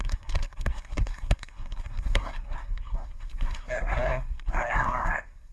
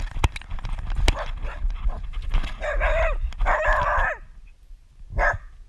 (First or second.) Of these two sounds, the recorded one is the second